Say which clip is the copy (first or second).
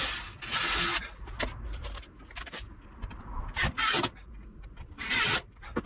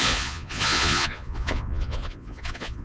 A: second